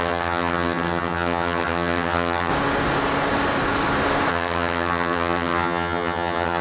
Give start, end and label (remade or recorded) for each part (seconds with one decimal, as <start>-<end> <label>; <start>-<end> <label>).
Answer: 0.0-2.5 remade; 2.5-4.3 recorded; 4.3-6.6 remade